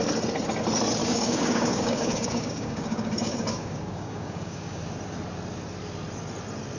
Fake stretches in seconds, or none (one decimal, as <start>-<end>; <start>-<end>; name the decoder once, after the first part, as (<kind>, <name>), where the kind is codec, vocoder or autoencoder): 1.0-4.8 (codec, DAC)